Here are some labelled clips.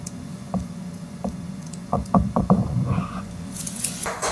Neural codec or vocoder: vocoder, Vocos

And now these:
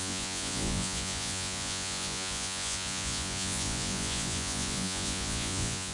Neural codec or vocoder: vocoder, Vocos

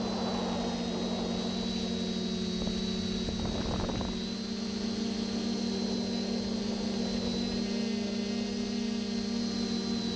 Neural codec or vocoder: none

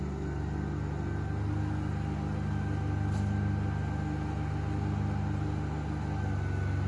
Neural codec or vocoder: none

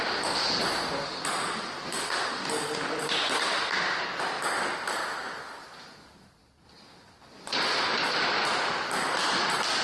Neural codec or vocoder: none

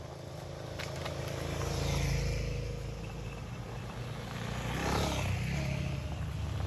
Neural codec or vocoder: none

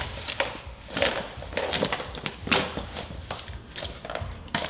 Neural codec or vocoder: none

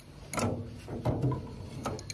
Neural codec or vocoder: none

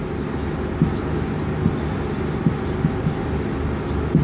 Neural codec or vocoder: none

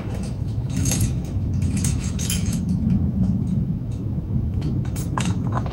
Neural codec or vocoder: autoencoder, DAC-VAE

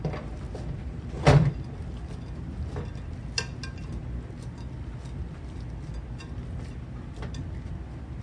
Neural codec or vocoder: none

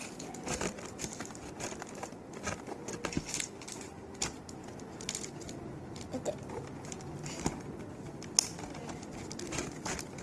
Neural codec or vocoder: none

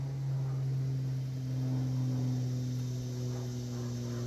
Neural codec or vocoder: none